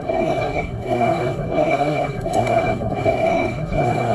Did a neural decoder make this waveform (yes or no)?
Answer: yes